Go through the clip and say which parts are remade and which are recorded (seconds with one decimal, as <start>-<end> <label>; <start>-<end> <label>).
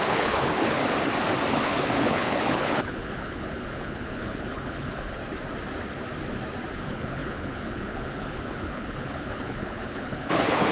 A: 0.0-0.8 remade; 0.8-1.5 recorded; 1.5-5.2 remade; 5.2-6.7 recorded; 6.7-10.7 remade